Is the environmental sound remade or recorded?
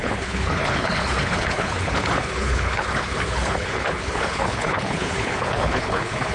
remade